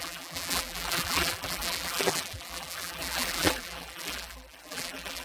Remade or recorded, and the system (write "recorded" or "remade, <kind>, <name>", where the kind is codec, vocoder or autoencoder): remade, vocoder, BigVGAN v2